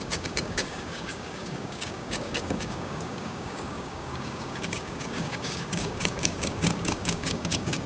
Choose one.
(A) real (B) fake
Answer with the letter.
B